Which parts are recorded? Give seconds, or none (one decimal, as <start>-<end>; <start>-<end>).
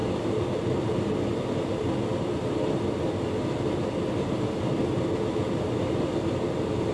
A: 0.0-6.9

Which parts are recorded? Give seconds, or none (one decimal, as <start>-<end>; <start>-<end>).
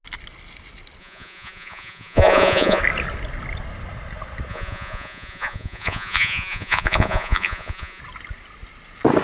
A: 0.0-1.0; 2.8-4.5; 8.0-9.2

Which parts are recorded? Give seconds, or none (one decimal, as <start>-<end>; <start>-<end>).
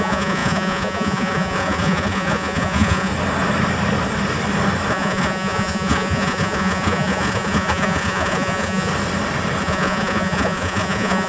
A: 3.1-4.9; 8.9-9.6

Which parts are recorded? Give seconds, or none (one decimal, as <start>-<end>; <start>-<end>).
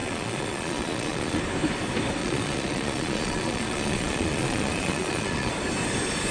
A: 1.4-2.2; 5.5-6.3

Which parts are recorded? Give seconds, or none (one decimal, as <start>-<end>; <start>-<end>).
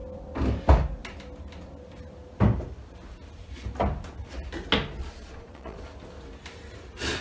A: 0.0-5.0; 5.8-7.2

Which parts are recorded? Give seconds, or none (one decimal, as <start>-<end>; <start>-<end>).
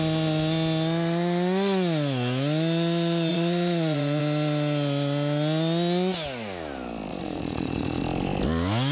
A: 0.0-3.3; 4.2-7.1; 8.0-8.9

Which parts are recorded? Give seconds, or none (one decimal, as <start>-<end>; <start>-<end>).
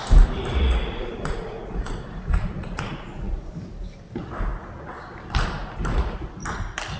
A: 0.0-0.5; 3.5-7.0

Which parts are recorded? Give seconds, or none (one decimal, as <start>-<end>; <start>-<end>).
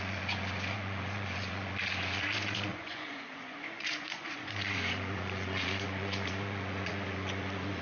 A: none